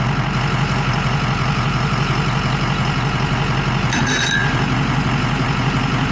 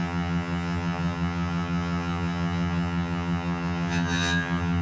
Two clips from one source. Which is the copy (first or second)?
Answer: second